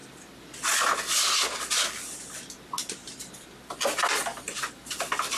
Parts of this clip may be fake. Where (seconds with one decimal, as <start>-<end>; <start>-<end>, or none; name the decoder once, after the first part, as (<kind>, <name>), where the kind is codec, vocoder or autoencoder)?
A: none